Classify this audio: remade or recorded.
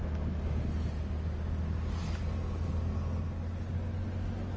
recorded